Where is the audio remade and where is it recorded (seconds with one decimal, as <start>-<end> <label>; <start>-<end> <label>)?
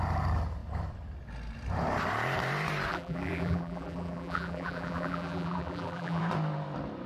0.0-2.9 recorded; 2.9-6.2 remade; 6.2-7.1 recorded